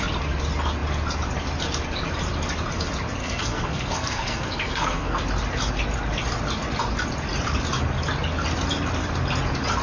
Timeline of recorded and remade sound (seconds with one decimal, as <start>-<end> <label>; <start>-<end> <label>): 0.0-3.2 recorded; 3.2-5.2 remade; 5.2-9.8 recorded